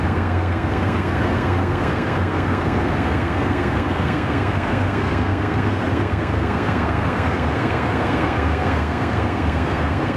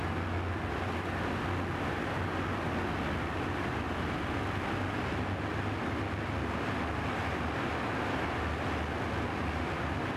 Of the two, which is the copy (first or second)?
first